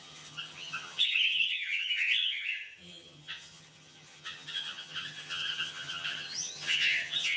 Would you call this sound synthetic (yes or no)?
yes